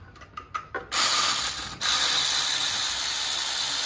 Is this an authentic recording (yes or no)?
yes